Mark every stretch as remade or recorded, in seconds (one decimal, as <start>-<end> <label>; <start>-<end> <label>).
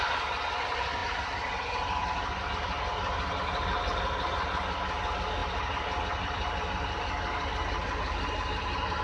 0.0-9.0 recorded